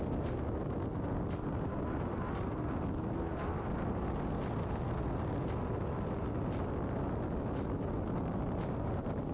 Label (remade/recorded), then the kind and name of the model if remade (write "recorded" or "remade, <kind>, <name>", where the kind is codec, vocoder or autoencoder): recorded